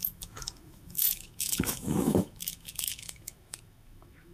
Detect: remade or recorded remade